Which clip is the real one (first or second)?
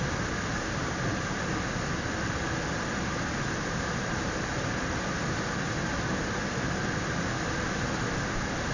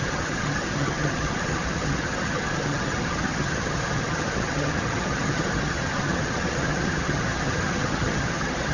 first